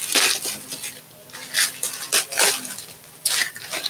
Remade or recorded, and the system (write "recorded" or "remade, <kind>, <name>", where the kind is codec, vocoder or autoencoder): recorded